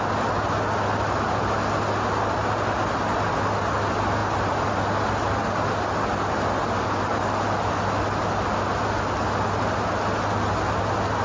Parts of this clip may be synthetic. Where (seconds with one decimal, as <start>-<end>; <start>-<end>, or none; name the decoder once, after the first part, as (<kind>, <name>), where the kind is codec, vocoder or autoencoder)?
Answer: none